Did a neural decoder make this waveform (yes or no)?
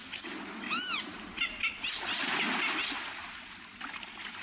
no